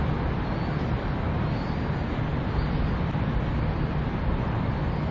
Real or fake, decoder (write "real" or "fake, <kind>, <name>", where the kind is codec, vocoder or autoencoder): real